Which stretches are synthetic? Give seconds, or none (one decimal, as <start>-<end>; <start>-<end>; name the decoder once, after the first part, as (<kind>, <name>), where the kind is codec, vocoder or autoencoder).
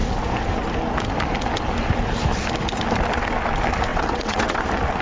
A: 3.9-4.6 (vocoder, WaveNeXt)